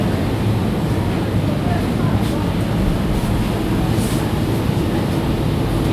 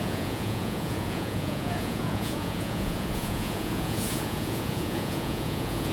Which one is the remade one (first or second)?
second